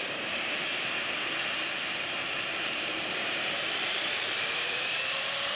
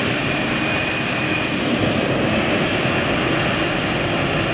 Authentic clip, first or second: second